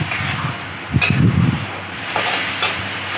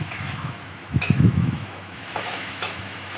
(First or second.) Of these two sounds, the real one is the first